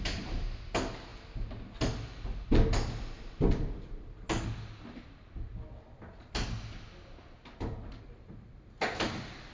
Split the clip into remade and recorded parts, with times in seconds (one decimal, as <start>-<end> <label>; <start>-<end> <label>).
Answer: 0.0-9.5 recorded